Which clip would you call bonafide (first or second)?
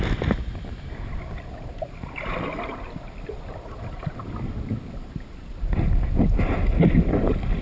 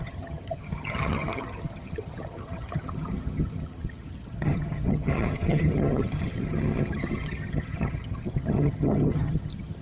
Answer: first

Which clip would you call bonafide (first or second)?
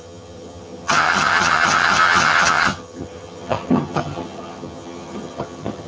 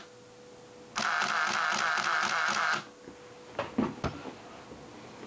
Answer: second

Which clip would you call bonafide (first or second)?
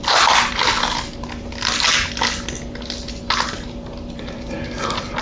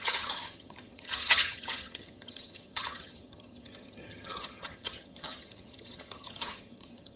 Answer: first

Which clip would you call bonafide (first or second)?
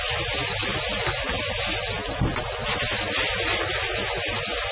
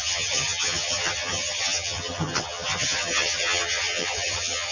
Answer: first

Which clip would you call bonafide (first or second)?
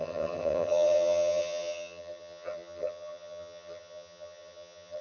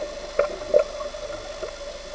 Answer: second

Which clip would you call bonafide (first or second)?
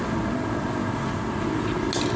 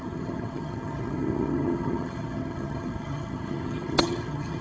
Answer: first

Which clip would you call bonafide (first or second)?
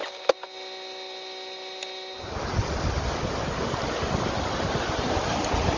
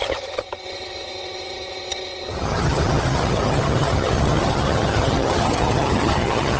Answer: first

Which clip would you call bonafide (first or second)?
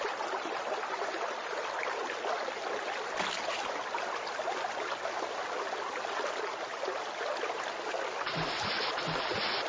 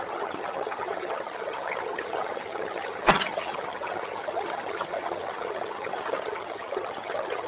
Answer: first